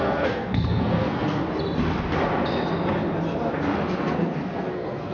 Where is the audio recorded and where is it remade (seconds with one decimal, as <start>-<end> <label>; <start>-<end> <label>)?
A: 0.0-1.4 remade; 1.4-4.0 recorded; 4.0-5.1 remade